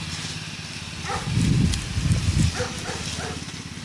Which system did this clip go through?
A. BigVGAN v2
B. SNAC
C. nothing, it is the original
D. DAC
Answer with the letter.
C